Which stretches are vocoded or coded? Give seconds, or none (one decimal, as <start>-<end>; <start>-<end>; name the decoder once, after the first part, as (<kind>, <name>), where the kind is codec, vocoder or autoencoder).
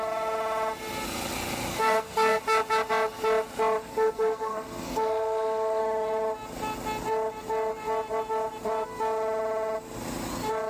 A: 1.7-2.4 (codec, SNAC); 3.9-5.8